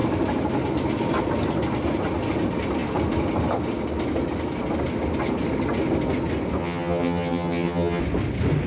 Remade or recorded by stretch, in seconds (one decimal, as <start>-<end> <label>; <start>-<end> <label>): 0.0-6.6 recorded; 6.6-8.0 remade; 8.0-8.7 recorded